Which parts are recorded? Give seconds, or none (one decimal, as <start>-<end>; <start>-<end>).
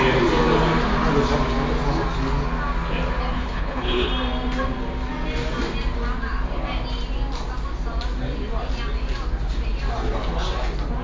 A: 0.0-3.3; 4.1-11.0